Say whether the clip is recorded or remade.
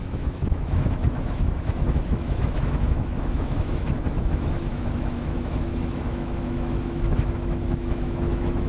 remade